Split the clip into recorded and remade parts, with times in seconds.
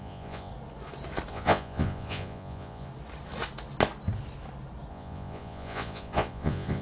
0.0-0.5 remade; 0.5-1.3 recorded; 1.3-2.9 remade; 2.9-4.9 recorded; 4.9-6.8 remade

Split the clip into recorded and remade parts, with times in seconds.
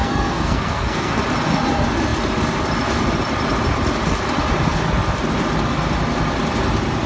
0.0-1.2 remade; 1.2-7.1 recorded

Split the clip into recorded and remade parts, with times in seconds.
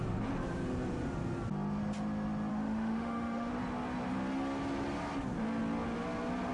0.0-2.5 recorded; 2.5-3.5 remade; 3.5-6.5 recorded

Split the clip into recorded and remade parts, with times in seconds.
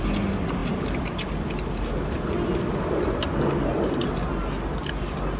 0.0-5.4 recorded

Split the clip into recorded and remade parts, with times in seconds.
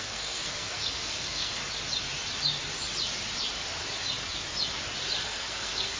0.0-1.6 remade; 1.6-5.2 recorded; 5.2-6.0 remade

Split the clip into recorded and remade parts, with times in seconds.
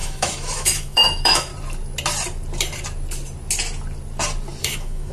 0.0-1.5 remade; 1.5-4.6 recorded; 4.6-5.1 remade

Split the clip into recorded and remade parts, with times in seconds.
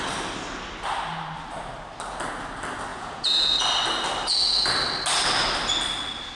0.0-2.9 recorded; 2.9-3.5 remade; 3.5-6.3 recorded